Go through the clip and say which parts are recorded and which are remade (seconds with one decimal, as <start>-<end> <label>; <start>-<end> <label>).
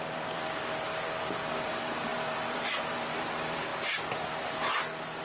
0.0-3.7 remade; 3.7-5.2 recorded